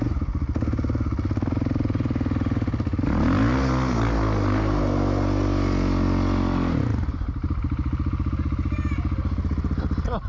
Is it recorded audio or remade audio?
recorded